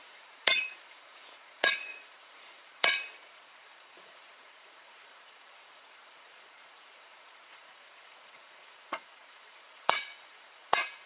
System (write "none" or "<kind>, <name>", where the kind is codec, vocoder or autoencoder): vocoder, Vocos